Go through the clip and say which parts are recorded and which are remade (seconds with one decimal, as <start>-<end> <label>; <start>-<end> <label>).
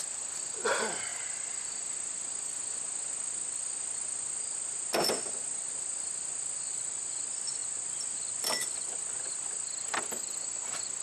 0.0-11.0 recorded